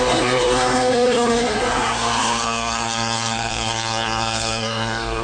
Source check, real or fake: fake